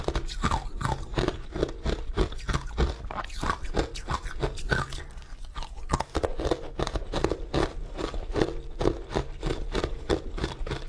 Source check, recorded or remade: recorded